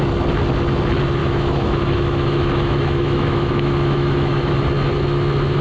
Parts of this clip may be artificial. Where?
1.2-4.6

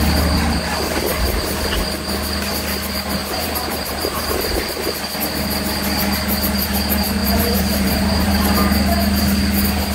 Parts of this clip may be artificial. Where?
3.2-4.9; 7.2-8.3

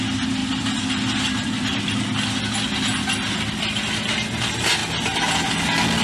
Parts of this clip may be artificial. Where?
none

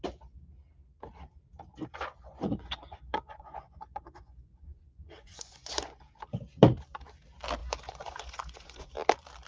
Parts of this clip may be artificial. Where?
2.2-6.0; 7.6-8.9

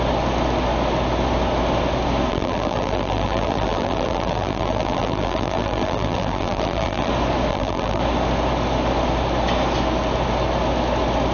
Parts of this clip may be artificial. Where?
2.3-7.1; 7.5-8.0

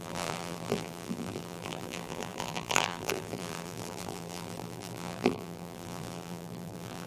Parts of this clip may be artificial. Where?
0.0-7.1